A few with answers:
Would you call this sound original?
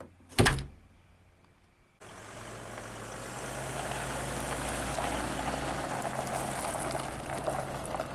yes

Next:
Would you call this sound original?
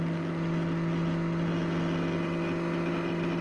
yes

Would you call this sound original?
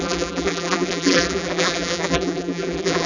no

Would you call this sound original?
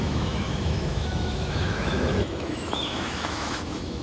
no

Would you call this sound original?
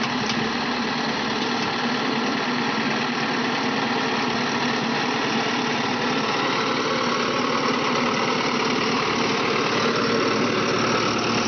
yes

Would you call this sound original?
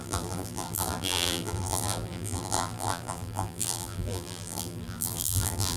no